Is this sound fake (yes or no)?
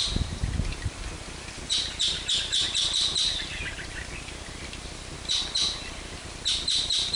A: yes